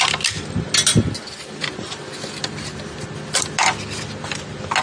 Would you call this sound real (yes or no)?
yes